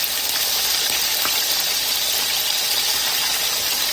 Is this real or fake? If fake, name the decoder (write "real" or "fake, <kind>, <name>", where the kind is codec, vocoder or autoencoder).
real